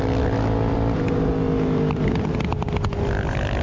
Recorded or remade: recorded